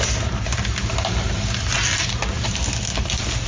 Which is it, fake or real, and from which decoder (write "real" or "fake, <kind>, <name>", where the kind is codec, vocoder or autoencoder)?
real